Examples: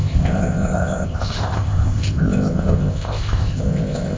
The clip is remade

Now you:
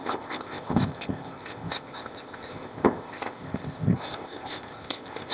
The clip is remade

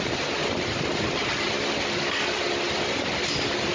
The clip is recorded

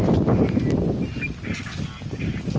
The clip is recorded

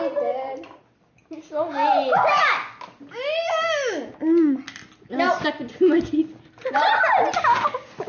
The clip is recorded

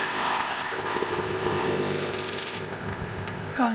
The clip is remade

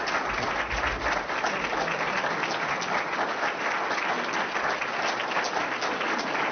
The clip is recorded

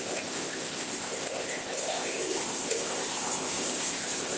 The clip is remade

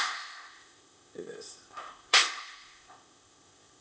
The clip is remade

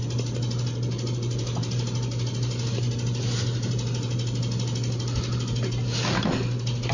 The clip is recorded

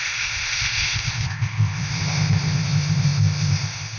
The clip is remade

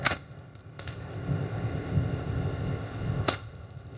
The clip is remade